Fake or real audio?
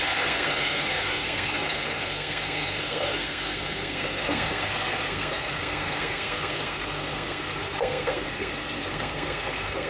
fake